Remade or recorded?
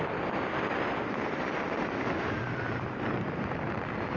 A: recorded